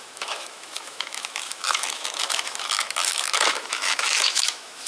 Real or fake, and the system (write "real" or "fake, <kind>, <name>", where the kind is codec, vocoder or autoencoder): fake, autoencoder, DAC-VAE